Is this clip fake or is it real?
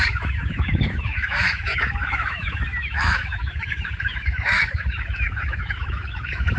fake